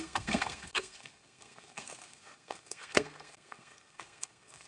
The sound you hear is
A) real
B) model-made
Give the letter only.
B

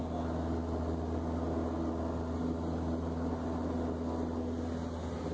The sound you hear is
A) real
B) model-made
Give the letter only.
A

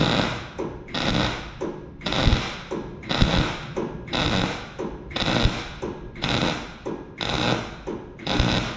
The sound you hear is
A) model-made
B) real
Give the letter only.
B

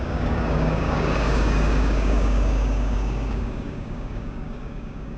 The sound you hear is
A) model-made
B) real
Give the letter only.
A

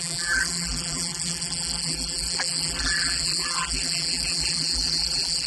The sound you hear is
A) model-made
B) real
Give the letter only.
A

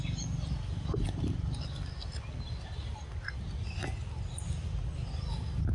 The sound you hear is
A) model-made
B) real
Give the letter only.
B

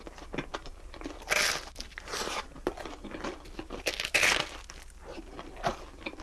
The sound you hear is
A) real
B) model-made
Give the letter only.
A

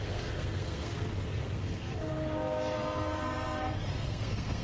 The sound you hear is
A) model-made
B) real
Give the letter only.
A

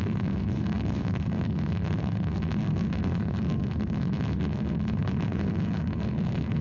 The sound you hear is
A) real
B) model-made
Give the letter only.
B